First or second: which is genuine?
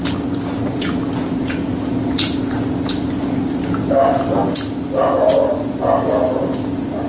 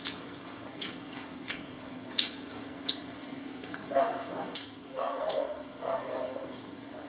first